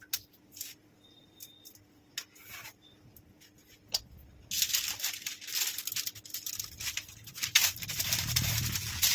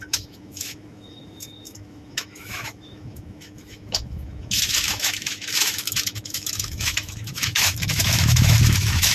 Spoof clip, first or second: second